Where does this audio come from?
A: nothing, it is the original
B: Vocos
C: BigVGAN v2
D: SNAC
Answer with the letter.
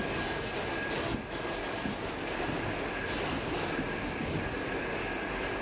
A